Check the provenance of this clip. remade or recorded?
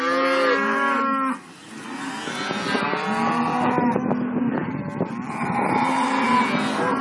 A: recorded